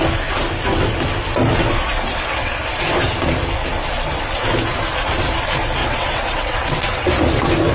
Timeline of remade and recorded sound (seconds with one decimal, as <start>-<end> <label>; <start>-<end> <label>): 0.0-5.8 recorded; 5.8-7.1 remade; 7.1-7.7 recorded